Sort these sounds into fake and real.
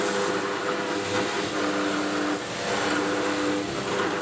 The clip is real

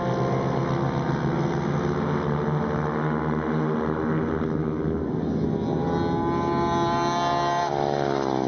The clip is real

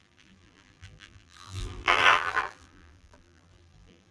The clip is fake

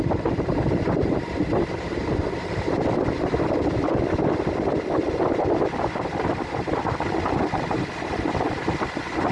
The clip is real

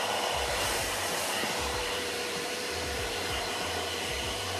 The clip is fake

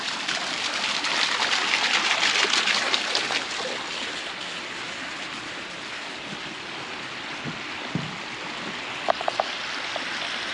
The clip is real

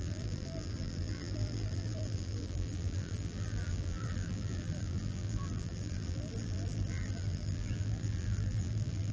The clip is fake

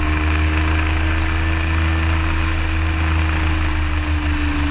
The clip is real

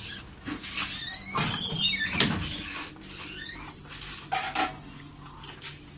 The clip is real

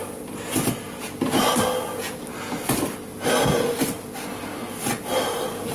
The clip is real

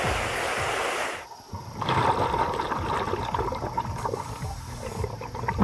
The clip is real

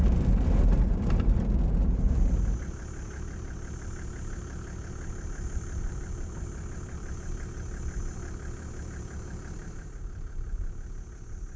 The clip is fake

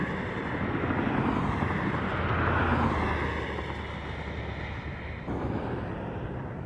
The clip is real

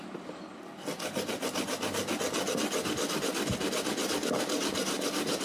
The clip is real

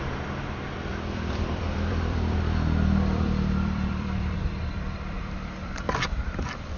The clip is fake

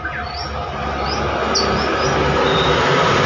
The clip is real